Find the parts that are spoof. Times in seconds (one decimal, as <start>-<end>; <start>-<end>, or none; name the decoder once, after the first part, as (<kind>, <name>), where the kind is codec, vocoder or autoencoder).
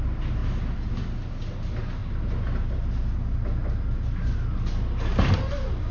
0.4-0.9 (vocoder, BigVGAN v2)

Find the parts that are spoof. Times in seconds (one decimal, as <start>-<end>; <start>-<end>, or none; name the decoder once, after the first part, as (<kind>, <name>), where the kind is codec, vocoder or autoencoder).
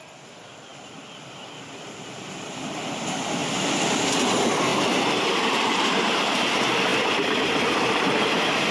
0.7-2.9 (vocoder, BigVGAN v2); 3.4-4.1; 4.7-6.0; 6.9-7.4